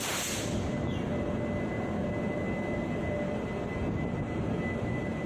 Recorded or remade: recorded